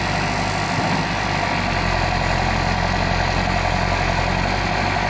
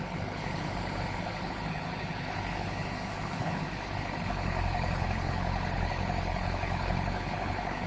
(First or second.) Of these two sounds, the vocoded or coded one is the second